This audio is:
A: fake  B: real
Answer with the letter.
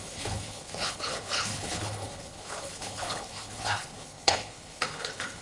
A